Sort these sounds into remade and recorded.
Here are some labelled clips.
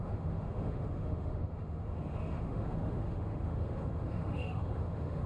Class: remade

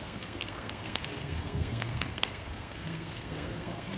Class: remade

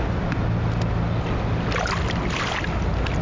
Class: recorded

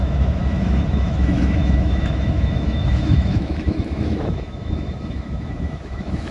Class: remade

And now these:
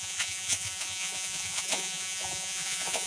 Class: remade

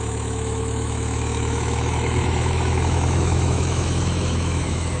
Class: remade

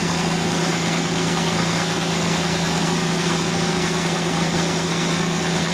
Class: remade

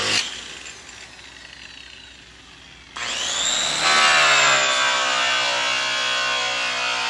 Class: recorded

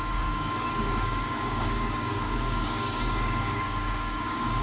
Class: remade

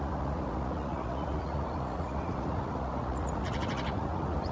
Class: remade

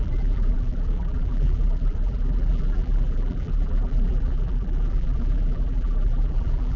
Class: remade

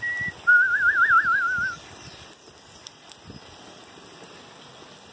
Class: recorded